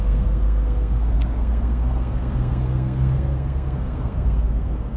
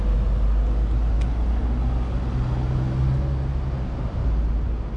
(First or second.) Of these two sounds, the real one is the second